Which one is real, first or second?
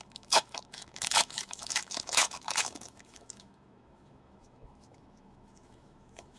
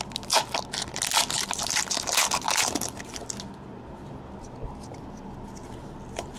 second